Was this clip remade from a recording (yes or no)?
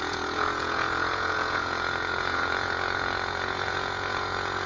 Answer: yes